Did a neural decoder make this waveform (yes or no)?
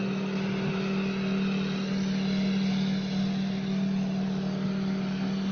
no